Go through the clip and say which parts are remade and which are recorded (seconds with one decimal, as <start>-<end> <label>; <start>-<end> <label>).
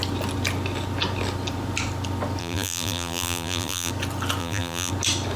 0.0-2.4 recorded; 2.4-3.9 remade; 3.9-4.4 recorded; 4.4-4.9 remade; 4.9-5.4 recorded